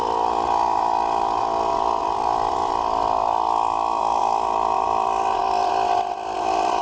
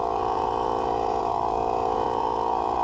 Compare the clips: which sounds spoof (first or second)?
second